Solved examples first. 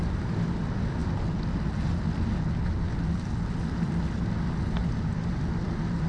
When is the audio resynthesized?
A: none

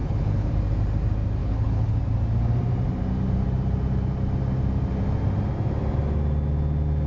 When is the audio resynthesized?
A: 0.0-0.5; 1.4-2.0

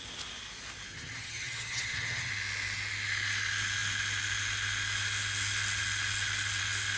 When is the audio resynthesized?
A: 0.9-2.3

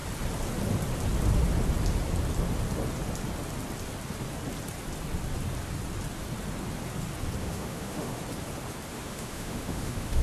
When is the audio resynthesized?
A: 7.4-8.2; 8.9-10.2

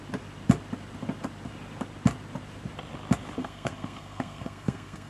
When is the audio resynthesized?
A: 3.4-5.1

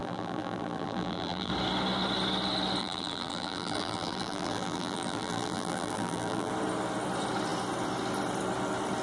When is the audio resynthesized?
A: 0.0-1.5; 2.8-6.5

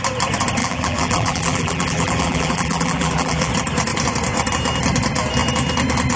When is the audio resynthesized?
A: 0.6-3.5

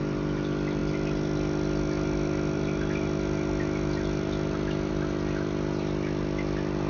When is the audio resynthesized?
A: none